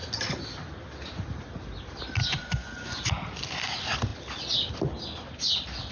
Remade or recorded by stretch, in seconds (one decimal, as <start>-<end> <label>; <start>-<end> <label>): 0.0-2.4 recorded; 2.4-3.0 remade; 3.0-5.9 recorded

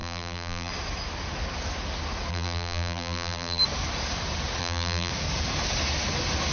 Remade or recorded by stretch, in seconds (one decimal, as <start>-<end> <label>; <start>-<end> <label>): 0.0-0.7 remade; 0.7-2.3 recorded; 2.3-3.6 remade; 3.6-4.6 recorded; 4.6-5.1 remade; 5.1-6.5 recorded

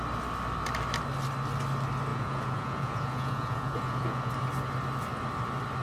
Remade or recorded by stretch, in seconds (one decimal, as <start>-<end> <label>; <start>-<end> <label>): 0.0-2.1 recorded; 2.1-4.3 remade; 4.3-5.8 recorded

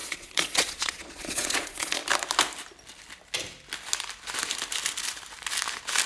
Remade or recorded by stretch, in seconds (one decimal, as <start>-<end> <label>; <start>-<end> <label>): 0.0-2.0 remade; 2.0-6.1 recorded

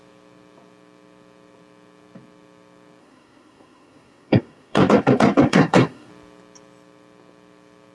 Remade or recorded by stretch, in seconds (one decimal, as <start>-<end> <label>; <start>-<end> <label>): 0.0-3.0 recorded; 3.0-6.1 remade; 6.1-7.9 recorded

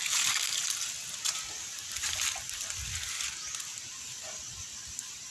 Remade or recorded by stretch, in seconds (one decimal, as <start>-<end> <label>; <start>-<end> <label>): 0.0-5.3 recorded

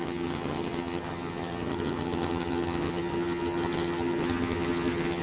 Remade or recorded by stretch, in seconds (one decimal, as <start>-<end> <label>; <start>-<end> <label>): 0.0-5.2 remade